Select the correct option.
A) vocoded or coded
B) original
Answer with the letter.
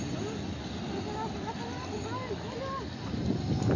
B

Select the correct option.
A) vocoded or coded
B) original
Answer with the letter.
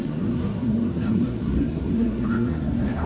A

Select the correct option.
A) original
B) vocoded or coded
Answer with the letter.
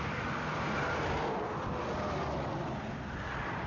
A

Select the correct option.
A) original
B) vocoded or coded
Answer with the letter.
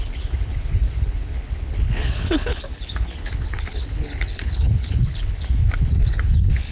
B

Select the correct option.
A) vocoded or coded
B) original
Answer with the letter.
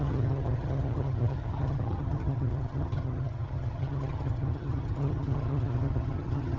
A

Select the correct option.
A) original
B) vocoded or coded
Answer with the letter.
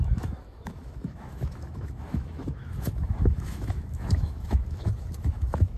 B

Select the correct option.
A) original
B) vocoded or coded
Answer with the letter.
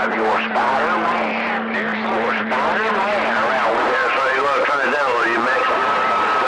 B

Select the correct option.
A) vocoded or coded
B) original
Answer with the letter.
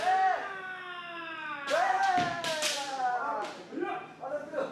B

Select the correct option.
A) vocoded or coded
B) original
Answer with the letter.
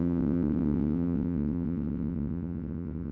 A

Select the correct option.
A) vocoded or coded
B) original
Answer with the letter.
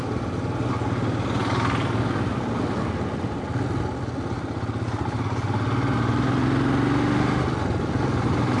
B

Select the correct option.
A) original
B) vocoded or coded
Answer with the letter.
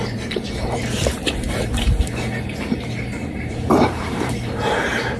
B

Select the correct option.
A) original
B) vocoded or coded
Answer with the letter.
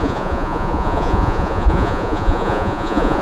B